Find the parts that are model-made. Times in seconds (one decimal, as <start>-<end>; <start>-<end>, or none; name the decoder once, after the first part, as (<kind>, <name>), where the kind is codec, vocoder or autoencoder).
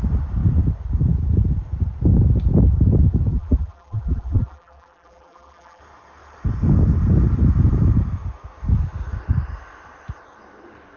3.3-5.8 (vocoder, BigVGAN v2)